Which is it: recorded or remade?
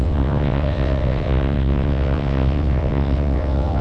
remade